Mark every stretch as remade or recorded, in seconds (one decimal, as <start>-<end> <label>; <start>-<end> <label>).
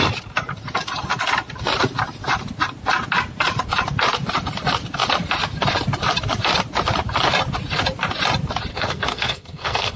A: 0.0-8.7 recorded; 8.7-10.0 remade